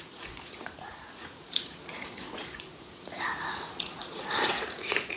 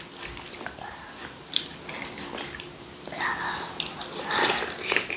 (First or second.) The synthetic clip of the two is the first